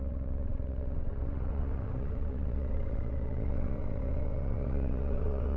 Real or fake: fake